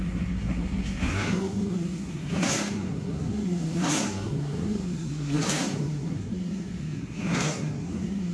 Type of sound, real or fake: fake